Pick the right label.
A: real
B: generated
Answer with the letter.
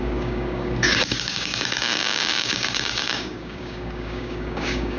B